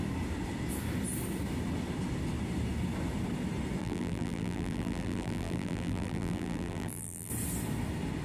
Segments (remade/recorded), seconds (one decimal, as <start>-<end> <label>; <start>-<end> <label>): 0.0-3.8 recorded; 3.8-7.3 remade; 7.3-8.2 recorded